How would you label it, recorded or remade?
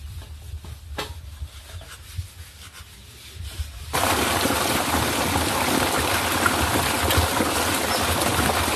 recorded